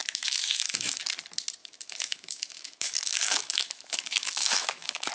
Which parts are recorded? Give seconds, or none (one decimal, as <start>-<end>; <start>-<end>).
1.0-1.6

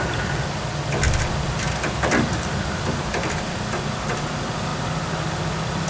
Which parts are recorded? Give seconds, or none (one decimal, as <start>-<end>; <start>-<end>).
0.0-5.9

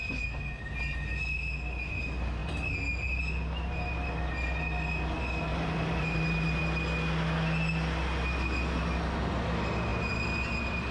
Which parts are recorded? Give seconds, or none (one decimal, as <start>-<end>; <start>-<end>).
0.0-5.5; 6.6-10.9

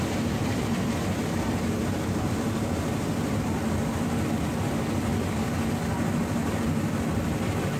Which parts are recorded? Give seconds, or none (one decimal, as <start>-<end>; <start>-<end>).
0.0-7.8

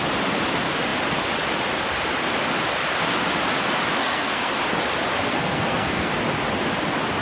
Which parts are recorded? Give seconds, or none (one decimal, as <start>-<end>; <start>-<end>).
0.0-4.0; 4.5-5.3; 6.1-7.2

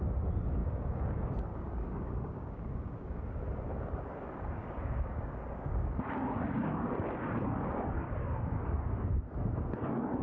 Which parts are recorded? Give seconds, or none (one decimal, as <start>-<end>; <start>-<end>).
0.0-0.6; 3.2-4.6; 8.9-10.2